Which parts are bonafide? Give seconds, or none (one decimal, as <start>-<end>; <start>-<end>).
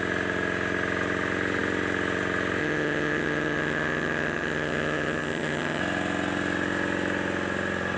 0.0-2.6; 5.8-8.0